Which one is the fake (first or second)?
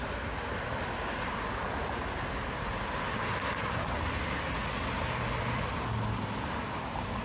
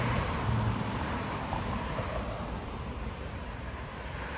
second